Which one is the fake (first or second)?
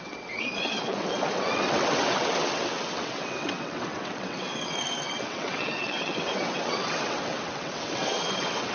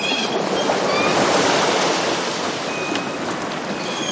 first